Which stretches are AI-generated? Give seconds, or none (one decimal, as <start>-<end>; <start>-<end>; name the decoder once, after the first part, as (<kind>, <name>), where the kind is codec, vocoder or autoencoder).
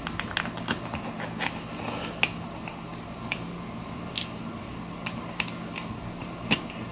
none